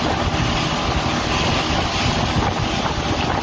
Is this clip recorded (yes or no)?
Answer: yes